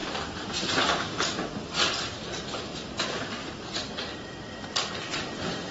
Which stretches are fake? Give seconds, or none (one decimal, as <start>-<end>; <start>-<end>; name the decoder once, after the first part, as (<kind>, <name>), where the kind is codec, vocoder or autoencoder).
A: none